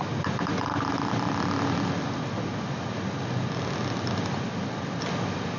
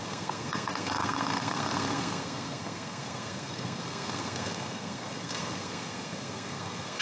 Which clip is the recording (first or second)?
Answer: first